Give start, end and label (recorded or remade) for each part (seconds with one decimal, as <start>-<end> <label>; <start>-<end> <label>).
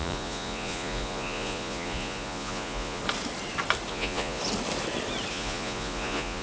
0.0-3.0 remade; 3.0-3.9 recorded; 3.9-4.4 remade; 4.4-5.3 recorded; 5.3-6.4 remade